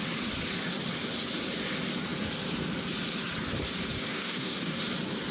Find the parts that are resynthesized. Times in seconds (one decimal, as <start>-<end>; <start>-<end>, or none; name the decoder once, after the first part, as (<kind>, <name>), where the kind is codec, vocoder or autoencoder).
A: 4.1-4.8 (codec, DAC)